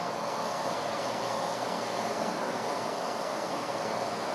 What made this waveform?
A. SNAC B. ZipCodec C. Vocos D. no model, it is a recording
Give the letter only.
A